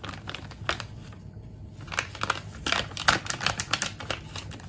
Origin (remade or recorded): recorded